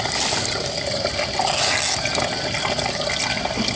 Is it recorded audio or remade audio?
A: recorded